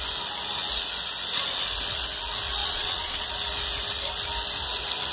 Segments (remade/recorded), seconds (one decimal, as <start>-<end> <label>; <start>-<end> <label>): 0.0-2.6 recorded; 2.6-3.3 remade; 3.3-5.1 recorded